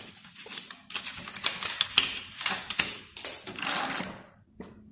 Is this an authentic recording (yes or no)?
yes